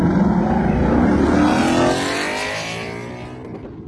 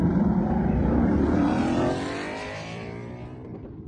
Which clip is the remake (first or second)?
second